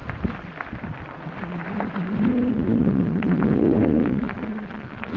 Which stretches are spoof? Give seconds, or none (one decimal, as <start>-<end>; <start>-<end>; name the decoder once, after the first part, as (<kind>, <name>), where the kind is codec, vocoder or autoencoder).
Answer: 2.5-5.2 (vocoder, Vocos)

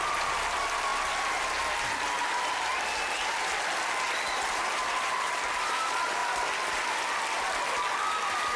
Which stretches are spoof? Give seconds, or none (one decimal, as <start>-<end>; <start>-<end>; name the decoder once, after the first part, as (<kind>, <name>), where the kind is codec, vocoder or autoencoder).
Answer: 0.0-0.9 (vocoder, BigVGAN v2); 4.4-6.2; 7.2-8.6

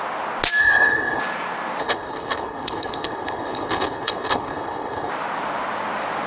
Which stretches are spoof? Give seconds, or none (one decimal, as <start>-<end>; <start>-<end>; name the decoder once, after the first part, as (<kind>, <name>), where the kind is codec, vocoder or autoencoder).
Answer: 0.6-1.2 (codec, HILCodec); 1.8-5.1

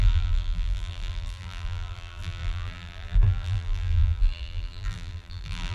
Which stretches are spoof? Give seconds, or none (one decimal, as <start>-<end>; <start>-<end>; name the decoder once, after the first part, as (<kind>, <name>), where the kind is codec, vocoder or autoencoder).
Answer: 0.0-5.7 (vocoder, BigVGAN v2)

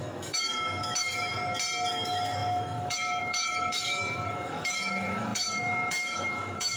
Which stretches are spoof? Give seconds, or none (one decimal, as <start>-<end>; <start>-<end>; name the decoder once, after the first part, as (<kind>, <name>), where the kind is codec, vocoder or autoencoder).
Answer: 0.0-1.3 (autoencoder, DAC-VAE); 1.9-6.8

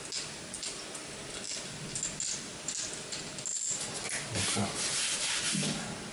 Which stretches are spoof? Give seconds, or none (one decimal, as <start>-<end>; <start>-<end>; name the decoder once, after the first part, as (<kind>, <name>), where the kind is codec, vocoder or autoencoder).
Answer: none

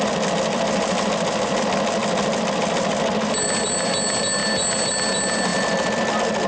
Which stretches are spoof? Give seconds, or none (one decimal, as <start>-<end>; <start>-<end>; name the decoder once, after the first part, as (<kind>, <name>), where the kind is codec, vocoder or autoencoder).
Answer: none

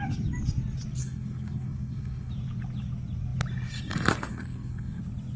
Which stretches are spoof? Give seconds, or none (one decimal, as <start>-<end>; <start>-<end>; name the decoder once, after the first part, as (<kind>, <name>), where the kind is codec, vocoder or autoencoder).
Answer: 1.0-2.3 (codec, SNAC); 4.3-5.0